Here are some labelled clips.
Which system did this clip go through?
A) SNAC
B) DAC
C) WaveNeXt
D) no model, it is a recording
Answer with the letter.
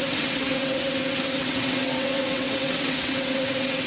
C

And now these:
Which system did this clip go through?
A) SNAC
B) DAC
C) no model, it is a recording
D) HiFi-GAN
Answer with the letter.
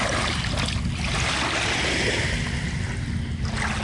C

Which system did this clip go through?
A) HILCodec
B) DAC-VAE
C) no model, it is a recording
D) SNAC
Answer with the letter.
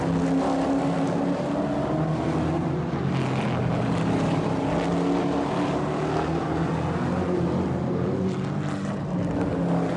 C